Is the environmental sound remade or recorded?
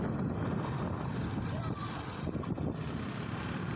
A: recorded